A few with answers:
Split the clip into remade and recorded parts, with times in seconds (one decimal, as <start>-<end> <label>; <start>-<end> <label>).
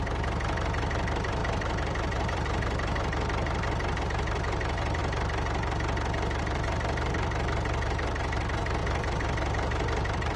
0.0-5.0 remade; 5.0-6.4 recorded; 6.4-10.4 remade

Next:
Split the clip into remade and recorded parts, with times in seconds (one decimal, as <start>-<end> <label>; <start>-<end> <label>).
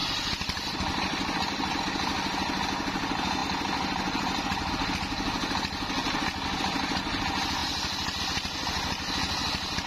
0.0-1.8 remade; 1.8-3.4 recorded; 3.4-4.7 remade; 4.7-7.6 recorded; 7.6-8.2 remade; 8.2-9.9 recorded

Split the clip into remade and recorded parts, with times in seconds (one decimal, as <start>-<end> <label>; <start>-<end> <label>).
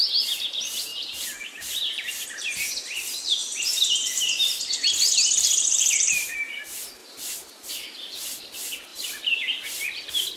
0.0-0.9 recorded; 0.9-2.7 remade; 2.7-3.4 recorded; 3.4-6.5 remade; 6.5-7.0 recorded; 7.0-7.7 remade; 7.7-8.9 recorded; 8.9-9.6 remade; 9.6-10.4 recorded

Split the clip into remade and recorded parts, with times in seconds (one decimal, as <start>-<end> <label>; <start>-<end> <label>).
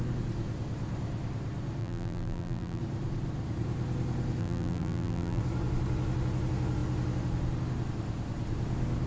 0.0-1.8 recorded; 1.8-2.8 remade; 2.8-4.4 recorded; 4.4-5.4 remade; 5.4-9.1 recorded